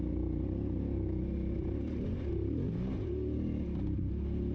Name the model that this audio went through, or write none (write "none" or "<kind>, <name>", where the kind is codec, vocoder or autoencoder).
none